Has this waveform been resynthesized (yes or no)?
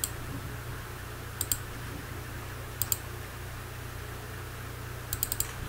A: no